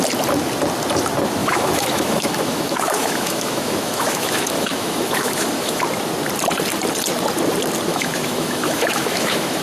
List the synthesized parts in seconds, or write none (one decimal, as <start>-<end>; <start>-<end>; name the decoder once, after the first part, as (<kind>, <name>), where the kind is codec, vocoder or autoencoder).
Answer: 1.4-5.8 (autoencoder, DAC-VAE); 7.9-9.6